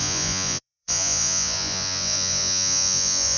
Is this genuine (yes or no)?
no